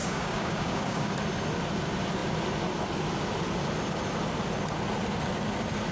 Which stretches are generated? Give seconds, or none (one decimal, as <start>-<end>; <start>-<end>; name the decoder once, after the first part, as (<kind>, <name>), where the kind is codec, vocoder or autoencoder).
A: 0.0-1.1 (codec, DAC)